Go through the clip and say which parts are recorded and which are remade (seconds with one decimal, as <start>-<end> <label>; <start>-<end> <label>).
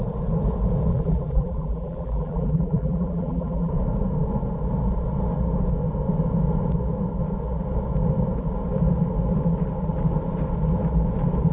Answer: 0.0-0.9 recorded; 0.9-3.7 remade; 3.7-11.5 recorded